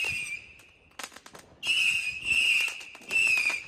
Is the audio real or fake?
real